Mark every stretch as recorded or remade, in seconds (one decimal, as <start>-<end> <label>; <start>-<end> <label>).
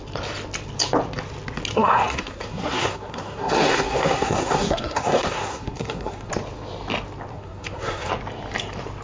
0.0-1.7 recorded; 1.7-6.3 remade; 6.3-7.3 recorded; 7.3-8.1 remade; 8.1-9.0 recorded